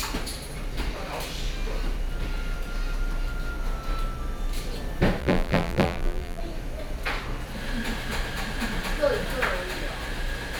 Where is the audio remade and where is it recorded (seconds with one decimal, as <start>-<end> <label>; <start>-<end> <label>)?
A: 0.0-5.2 recorded; 5.2-6.4 remade; 6.4-10.6 recorded

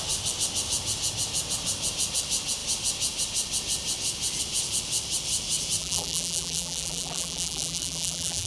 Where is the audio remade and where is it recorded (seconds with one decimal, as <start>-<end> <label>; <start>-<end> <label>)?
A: 0.0-5.8 recorded; 5.8-8.5 remade

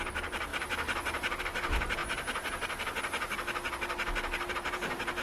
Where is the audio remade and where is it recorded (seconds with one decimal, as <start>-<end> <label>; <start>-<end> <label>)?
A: 0.0-2.0 remade; 2.0-4.5 recorded; 4.5-5.2 remade

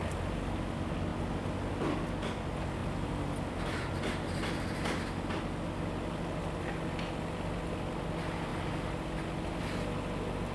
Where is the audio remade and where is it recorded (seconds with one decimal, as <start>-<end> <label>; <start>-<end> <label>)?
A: 0.0-2.8 recorded; 2.8-3.9 remade; 3.9-10.5 recorded

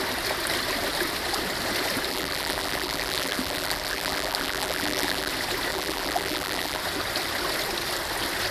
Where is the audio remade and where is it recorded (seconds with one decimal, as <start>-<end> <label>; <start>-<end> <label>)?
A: 0.0-2.1 recorded; 2.1-5.3 remade; 5.3-5.7 recorded; 5.7-6.8 remade; 6.8-8.5 recorded

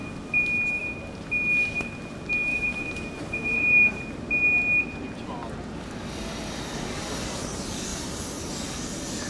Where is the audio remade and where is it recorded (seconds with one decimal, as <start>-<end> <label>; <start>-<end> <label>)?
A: 0.0-2.5 recorded; 2.5-4.0 remade; 4.0-7.9 recorded; 7.9-8.4 remade; 8.4-9.3 recorded